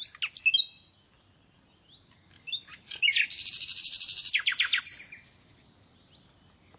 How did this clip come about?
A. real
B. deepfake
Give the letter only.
A